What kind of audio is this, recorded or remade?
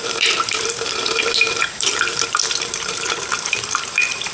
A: remade